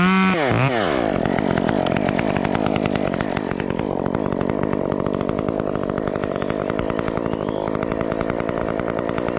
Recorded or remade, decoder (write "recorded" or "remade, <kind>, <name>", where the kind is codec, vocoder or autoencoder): recorded